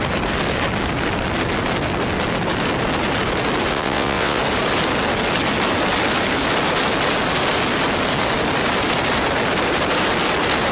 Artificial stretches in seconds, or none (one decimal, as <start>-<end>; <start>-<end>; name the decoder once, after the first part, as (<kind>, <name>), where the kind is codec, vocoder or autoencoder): 3.7-4.4 (vocoder, WaveNeXt)

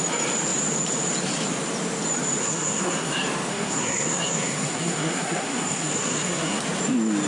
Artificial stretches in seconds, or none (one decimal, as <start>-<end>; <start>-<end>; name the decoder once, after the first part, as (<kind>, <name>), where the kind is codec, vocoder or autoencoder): 2.4-3.1 (codec, SNAC); 3.5-6.6

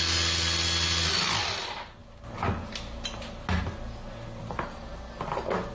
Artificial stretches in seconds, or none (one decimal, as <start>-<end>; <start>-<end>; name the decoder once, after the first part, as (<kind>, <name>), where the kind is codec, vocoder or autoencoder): none

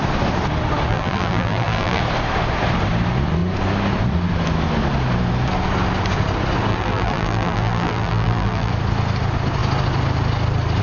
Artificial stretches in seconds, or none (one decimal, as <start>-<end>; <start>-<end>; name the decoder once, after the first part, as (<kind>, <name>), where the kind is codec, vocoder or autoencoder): 0.9-2.0 (vocoder, BigVGAN v2); 6.7-8.7